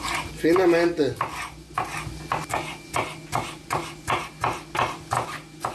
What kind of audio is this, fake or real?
real